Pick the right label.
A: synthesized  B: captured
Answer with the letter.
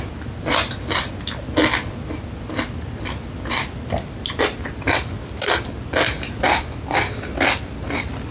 B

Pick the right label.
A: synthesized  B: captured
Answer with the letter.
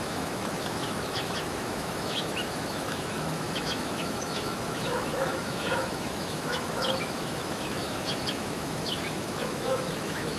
A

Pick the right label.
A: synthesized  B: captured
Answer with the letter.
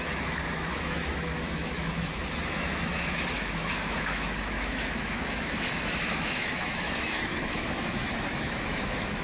A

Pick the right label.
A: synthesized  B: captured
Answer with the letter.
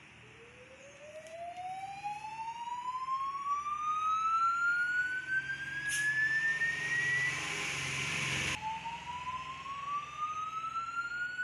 B